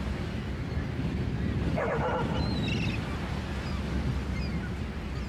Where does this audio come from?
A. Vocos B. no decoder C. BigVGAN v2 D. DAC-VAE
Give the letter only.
B